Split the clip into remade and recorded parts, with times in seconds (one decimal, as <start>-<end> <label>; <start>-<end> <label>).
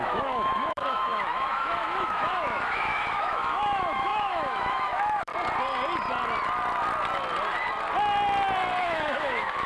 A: 0.0-5.3 remade; 5.3-8.8 recorded; 8.8-9.7 remade